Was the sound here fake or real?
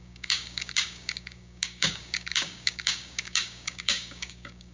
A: fake